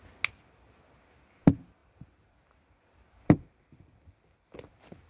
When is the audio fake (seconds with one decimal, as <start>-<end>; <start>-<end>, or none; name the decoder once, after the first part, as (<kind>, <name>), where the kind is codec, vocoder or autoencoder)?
1.8-5.1 (vocoder, BigVGAN v2)